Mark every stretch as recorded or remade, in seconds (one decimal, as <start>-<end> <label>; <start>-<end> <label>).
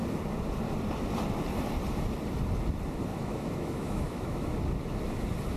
0.0-3.1 recorded; 3.1-4.6 remade; 4.6-5.6 recorded